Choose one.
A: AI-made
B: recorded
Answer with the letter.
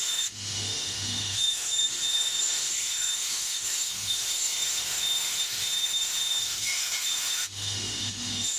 A